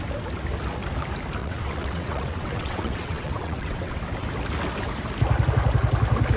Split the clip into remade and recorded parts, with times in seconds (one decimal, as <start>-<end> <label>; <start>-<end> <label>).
0.0-1.4 recorded; 1.4-4.0 remade; 4.0-6.4 recorded